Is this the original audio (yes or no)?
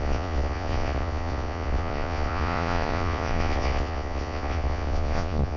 no